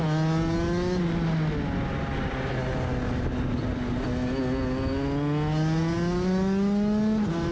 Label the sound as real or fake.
real